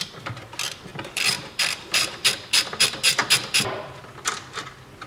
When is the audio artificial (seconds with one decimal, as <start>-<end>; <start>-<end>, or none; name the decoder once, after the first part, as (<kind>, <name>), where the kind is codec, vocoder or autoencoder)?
0.9-2.2 (vocoder, BigVGAN v2); 3.2-4.6